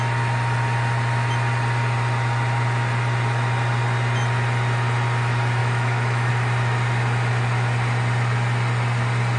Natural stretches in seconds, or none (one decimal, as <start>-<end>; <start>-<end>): 0.0-5.6; 6.3-9.4